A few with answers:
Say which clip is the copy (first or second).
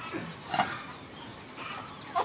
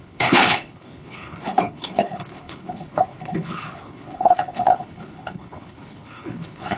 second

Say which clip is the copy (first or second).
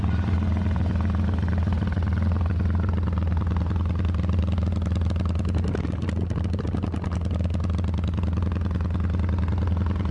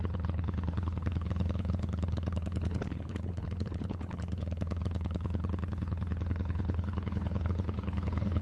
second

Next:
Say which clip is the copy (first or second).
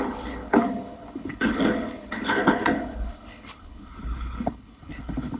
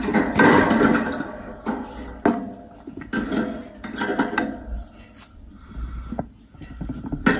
first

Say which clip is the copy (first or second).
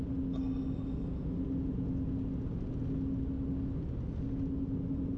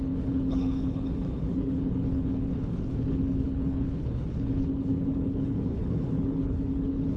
second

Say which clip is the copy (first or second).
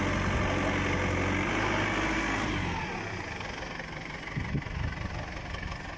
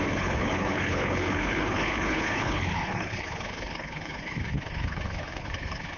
second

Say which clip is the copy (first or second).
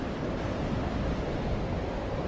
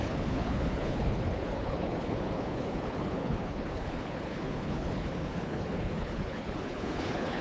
second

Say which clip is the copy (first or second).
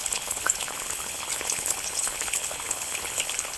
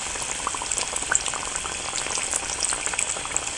first